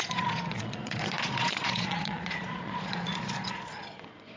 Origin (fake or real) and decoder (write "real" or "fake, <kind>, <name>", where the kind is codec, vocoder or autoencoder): fake, vocoder, Vocos